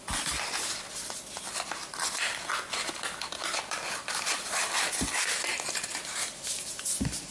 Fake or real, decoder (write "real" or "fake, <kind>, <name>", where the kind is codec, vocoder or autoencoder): real